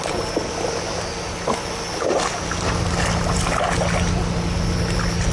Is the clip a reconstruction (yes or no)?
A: no